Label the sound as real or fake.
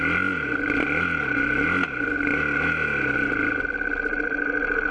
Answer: real